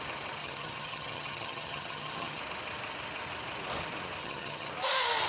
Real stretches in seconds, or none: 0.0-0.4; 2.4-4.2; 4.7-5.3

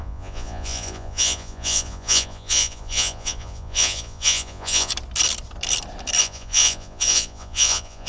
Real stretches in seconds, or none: 4.9-6.2

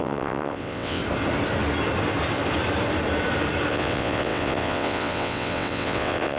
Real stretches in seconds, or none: 1.0-3.7